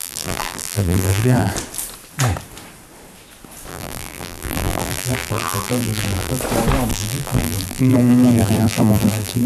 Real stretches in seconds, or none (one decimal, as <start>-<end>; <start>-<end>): 1.5-3.7; 6.4-6.9